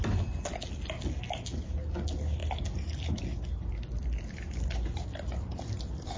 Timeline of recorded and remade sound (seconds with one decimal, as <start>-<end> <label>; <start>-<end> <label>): 0.0-2.4 recorded; 2.4-6.2 remade